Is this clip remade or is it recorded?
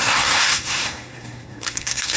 remade